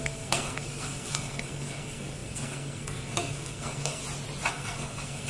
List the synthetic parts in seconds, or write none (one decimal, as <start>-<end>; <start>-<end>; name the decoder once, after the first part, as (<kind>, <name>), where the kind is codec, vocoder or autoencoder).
0.0-4.0 (codec, SNAC); 4.5-5.3